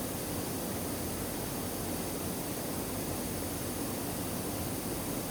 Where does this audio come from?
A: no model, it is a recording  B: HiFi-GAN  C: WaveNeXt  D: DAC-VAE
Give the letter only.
A